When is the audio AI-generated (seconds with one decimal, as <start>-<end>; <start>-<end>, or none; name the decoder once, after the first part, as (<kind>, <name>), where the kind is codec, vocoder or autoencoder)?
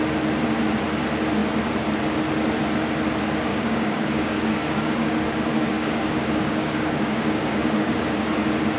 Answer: 3.5-8.0 (codec, DAC)